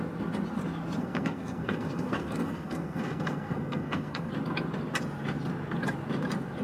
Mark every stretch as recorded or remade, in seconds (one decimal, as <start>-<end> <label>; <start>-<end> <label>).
0.0-1.0 recorded; 1.0-4.3 remade; 4.3-6.6 recorded